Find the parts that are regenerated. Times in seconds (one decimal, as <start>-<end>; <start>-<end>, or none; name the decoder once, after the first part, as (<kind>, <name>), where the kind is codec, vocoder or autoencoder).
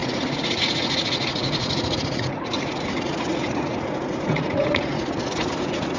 0.0-6.0 (vocoder, Vocos)